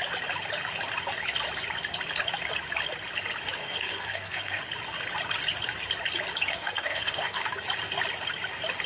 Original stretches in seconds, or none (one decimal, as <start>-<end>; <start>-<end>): 0.0-3.6; 4.6-6.5; 7.4-8.9